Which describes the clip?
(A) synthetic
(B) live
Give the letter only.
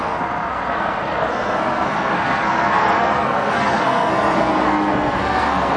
A